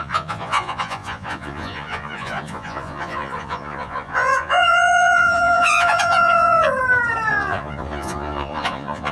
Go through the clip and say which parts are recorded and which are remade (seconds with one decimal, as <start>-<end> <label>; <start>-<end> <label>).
0.0-6.7 remade; 6.7-7.3 recorded; 7.3-9.1 remade